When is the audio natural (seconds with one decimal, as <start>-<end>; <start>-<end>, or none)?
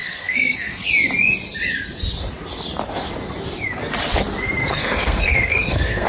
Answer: 0.9-4.6